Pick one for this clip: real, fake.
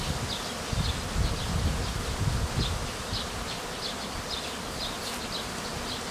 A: real